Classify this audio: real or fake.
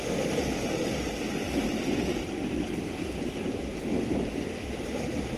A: real